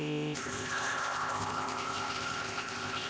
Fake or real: fake